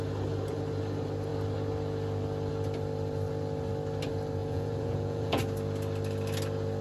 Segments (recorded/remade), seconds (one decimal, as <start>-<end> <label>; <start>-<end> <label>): 0.0-4.4 recorded; 4.4-5.4 remade; 5.4-6.8 recorded